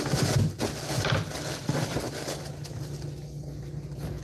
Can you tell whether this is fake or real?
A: real